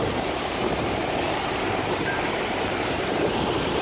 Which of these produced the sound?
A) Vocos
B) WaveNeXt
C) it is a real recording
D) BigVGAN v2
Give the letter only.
D